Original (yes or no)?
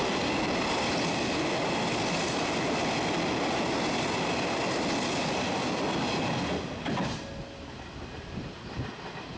yes